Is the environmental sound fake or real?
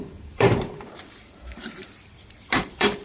fake